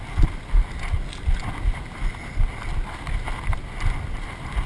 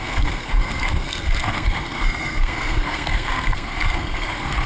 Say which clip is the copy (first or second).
second